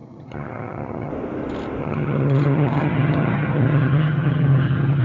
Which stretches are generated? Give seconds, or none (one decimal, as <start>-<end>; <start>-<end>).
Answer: 0.0-1.1; 1.8-5.0